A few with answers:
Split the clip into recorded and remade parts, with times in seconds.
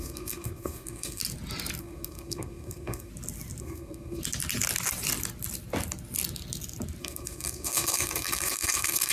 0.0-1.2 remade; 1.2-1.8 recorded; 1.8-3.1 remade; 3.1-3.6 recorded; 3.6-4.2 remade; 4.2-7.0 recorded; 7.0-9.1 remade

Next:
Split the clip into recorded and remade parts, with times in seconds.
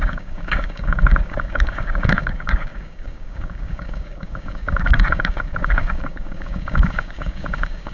0.0-7.9 remade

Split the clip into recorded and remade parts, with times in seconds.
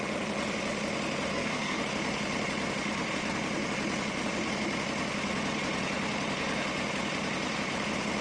0.0-1.3 recorded; 1.3-1.8 remade; 1.8-8.2 recorded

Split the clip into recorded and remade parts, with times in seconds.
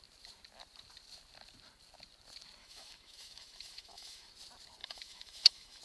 0.0-2.6 recorded; 2.6-4.3 remade; 4.3-4.8 recorded; 4.8-5.8 remade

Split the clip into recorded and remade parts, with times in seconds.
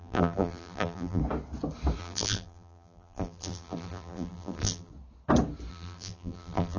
0.0-1.2 remade; 1.2-2.0 recorded; 2.0-4.9 remade; 4.9-5.7 recorded; 5.7-6.8 remade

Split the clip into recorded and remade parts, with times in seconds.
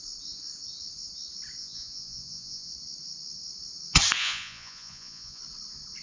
0.0-1.6 recorded; 1.6-2.7 remade; 2.7-4.2 recorded; 4.2-5.4 remade; 5.4-6.0 recorded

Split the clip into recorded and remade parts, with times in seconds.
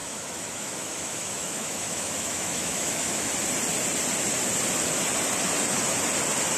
0.0-3.3 remade; 3.3-6.6 recorded